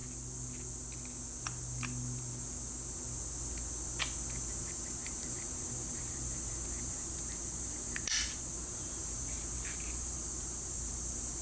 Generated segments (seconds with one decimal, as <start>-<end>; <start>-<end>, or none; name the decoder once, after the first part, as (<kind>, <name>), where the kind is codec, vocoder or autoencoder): 4.6-11.4 (vocoder, BigVGAN v2)